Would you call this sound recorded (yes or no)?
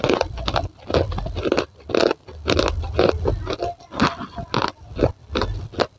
yes